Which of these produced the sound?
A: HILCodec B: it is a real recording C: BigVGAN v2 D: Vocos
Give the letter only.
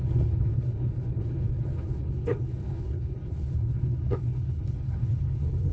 A